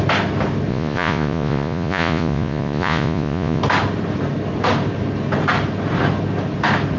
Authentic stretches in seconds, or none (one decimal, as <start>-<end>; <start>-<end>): 0.0-0.7; 3.6-7.0